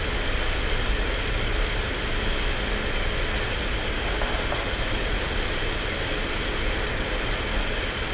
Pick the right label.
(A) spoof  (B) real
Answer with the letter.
B